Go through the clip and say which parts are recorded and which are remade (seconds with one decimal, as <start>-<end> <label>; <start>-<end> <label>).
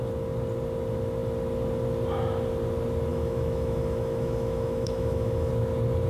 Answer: 0.0-3.1 recorded; 3.1-5.5 remade; 5.5-6.1 recorded